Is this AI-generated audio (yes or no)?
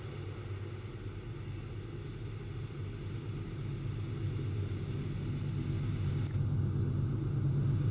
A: no